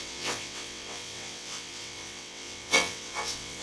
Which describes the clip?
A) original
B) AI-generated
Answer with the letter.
B